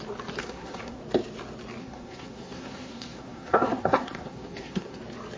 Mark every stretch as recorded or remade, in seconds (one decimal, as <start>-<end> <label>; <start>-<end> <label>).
0.0-0.4 recorded; 0.4-1.0 remade; 1.0-1.8 recorded; 1.8-5.0 remade; 5.0-5.4 recorded